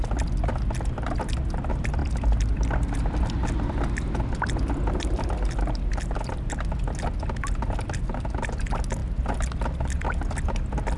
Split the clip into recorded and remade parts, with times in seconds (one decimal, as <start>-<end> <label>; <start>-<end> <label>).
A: 0.0-11.0 recorded